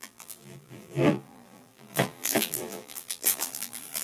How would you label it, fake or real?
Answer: fake